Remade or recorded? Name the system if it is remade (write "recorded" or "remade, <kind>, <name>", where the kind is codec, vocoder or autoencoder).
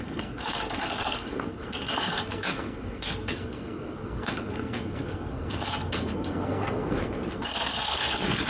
remade, codec, SNAC